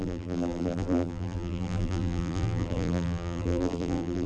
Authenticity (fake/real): fake